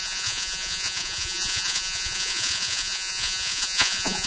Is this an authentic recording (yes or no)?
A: no